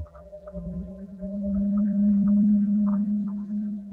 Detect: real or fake fake